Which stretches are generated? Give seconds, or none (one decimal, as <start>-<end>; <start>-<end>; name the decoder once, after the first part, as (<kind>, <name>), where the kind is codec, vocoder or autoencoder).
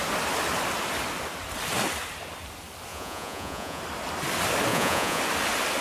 2.9-3.8 (vocoder, Vocos); 4.7-5.2